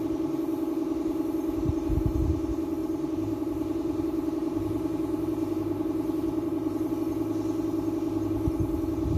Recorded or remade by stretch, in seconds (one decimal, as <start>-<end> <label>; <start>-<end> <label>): 0.0-2.8 recorded; 2.8-6.9 remade; 6.9-9.2 recorded